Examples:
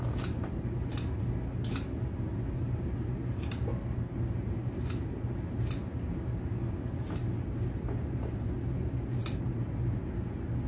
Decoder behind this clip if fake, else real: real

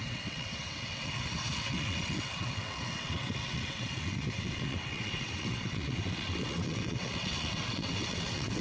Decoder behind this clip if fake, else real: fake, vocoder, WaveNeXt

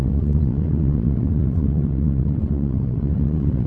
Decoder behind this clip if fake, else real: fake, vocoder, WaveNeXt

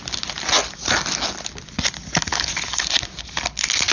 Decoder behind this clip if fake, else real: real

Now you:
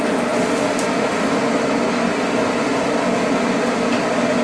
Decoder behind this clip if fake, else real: real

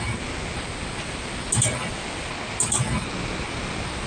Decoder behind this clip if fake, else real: real